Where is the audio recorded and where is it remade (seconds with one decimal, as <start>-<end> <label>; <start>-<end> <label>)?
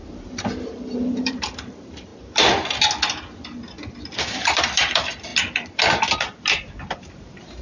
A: 0.0-2.1 remade; 2.1-4.2 recorded; 4.2-5.3 remade; 5.3-7.0 recorded; 7.0-7.6 remade